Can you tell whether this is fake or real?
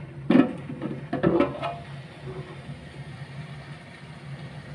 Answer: real